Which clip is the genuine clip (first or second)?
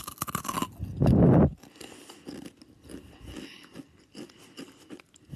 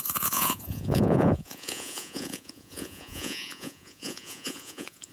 first